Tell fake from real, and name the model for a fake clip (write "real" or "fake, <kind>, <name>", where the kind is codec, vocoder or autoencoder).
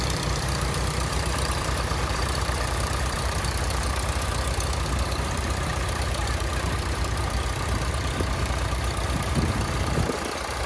fake, vocoder, BigVGAN v2